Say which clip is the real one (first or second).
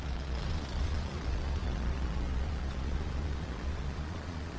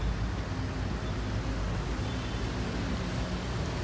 second